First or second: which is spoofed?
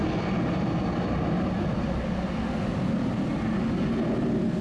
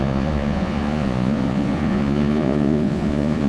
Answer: second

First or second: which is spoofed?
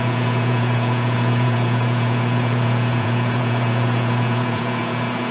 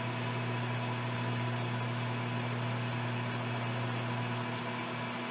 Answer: first